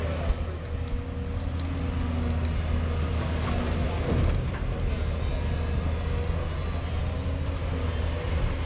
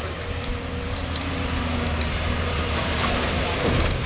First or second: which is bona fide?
first